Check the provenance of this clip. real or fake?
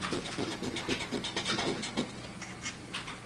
real